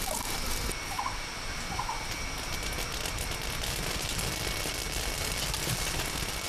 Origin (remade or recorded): recorded